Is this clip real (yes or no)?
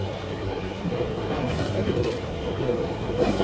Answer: no